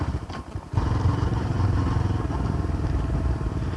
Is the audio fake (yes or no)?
yes